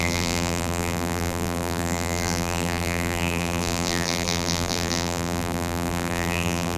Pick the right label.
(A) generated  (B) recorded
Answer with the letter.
A